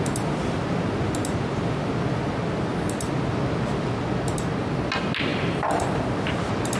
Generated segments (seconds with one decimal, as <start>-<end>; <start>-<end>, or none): 5.3-5.8